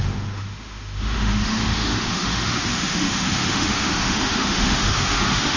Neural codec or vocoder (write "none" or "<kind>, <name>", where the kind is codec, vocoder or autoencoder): autoencoder, DAC-VAE